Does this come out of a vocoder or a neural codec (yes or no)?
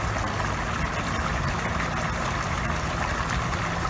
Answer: no